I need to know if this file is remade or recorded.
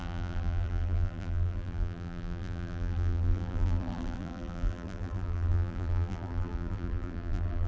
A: remade